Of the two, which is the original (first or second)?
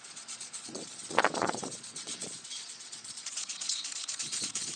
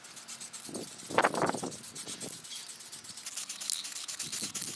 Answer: second